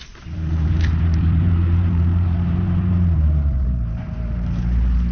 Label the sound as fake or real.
fake